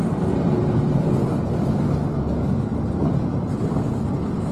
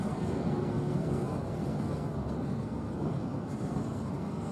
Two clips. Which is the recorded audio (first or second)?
first